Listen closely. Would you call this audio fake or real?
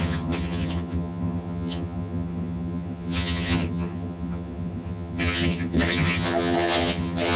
fake